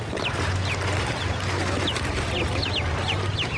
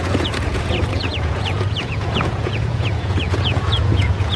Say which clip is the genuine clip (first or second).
first